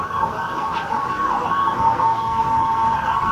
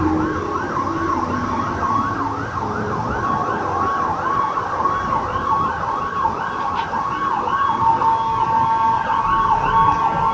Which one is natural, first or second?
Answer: second